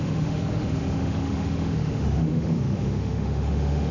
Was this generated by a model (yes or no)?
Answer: yes